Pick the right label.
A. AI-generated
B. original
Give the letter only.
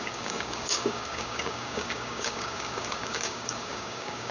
A